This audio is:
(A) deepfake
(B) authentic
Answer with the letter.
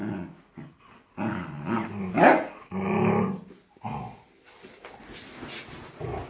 B